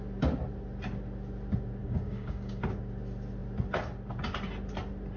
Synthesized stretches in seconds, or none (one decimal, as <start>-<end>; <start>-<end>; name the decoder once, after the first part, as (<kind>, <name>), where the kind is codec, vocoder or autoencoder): 1.8-2.6 (codec, DAC)